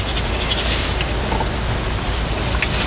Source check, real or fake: real